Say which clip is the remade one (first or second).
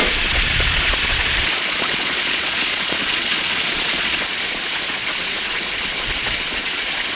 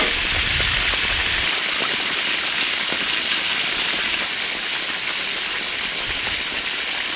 first